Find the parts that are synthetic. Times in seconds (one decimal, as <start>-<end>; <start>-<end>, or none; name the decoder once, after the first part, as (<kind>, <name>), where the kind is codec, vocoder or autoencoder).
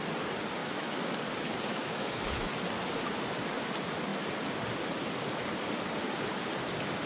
0.6-1.2 (autoencoder, DAC-VAE); 1.7-2.5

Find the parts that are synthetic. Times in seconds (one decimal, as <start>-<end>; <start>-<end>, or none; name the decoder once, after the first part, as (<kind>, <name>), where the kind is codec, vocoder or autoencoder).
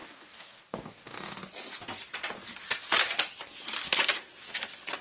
0.0-1.4 (codec, DAC)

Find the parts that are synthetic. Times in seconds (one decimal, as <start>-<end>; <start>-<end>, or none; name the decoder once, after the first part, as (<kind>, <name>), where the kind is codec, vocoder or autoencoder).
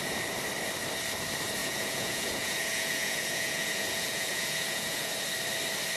1.6-5.1 (vocoder, Vocos)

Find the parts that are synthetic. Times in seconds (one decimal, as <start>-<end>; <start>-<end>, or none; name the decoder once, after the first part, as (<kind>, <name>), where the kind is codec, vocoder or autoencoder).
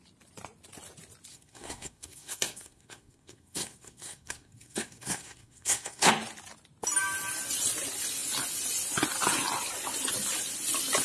1.3-6.1 (codec, SNAC)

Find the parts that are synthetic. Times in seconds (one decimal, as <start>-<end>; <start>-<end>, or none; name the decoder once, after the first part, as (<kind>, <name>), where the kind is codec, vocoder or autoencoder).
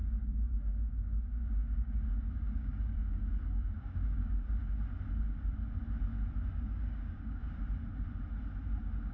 0.0-4.6 (codec, DAC); 6.5-7.4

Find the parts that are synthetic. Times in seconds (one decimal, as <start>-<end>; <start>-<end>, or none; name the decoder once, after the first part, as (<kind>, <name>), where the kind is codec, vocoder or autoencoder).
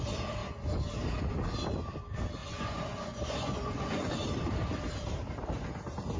2.4-4.1 (vocoder, Vocos)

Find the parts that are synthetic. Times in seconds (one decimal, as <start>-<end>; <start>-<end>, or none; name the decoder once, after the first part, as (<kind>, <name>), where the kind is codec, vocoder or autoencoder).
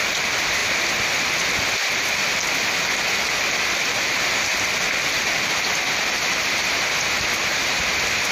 0.0-0.6 (vocoder, BigVGAN v2); 5.6-8.3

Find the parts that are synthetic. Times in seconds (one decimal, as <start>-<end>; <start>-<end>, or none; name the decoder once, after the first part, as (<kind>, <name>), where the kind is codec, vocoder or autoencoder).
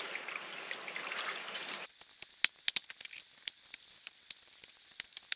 none